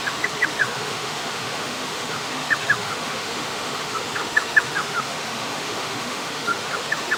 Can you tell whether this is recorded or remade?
remade